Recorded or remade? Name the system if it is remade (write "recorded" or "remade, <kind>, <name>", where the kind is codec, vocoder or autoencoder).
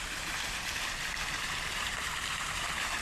remade, vocoder, BigVGAN v2